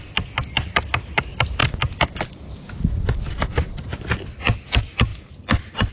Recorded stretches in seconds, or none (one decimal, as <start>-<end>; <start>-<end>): 0.0-5.9